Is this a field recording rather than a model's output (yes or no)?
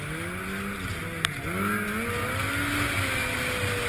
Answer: yes